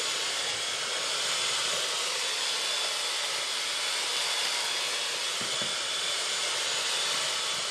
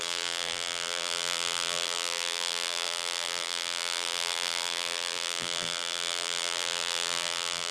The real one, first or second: first